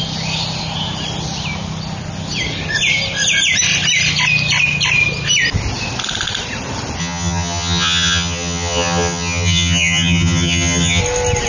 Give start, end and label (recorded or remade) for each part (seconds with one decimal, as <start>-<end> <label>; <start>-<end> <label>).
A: 0.0-7.0 recorded; 7.0-11.0 remade; 11.0-11.5 recorded